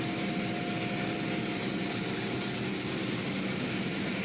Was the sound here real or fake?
real